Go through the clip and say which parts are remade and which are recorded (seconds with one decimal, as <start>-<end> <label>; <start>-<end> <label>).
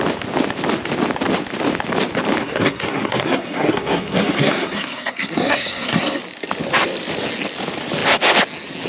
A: 0.0-2.4 recorded; 2.4-6.2 remade; 6.2-8.9 recorded